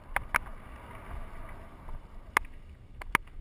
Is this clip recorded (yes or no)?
yes